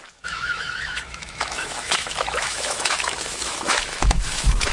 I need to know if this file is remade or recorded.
remade